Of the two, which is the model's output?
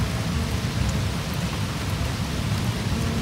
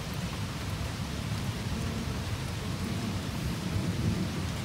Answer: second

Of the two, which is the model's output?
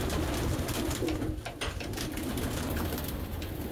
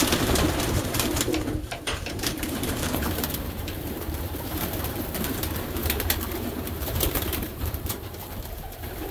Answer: second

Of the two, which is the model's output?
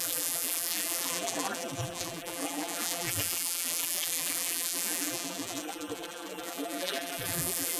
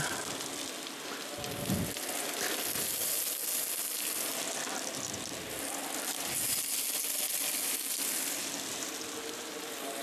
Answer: first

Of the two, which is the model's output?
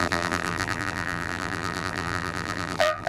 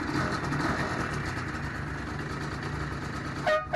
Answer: first